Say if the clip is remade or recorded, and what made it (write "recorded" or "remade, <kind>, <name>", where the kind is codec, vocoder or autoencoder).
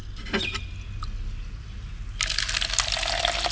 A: recorded